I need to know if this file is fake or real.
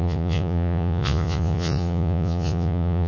fake